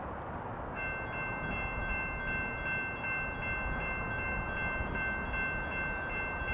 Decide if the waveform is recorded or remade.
recorded